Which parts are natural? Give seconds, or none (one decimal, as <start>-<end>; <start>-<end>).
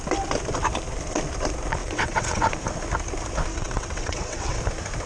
0.0-1.8; 2.5-3.5; 4.6-5.1